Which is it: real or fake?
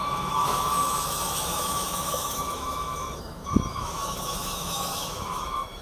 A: fake